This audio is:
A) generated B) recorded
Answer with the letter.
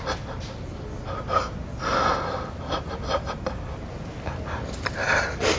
B